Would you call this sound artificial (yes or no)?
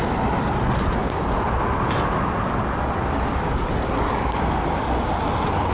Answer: no